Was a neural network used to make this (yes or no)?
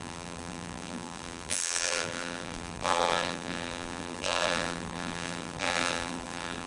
yes